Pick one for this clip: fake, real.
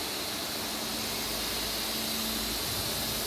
real